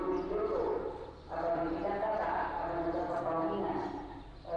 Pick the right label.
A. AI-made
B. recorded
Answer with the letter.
B